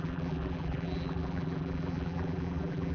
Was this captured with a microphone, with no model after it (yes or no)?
no